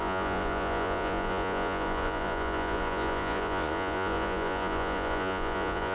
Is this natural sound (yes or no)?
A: no